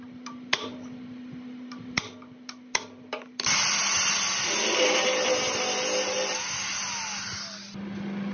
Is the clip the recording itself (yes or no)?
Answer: yes